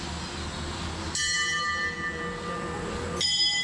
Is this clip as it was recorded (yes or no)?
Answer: yes